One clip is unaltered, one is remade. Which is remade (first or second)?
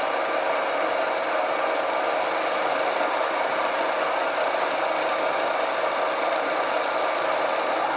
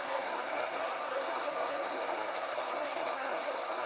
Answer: second